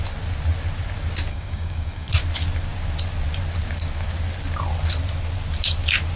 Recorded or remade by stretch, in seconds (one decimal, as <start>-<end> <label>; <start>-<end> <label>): 0.0-1.3 recorded; 1.3-2.1 remade; 2.1-6.2 recorded